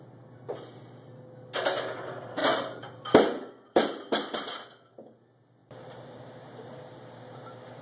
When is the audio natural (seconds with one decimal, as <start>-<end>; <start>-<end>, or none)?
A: 0.0-5.6; 6.8-7.8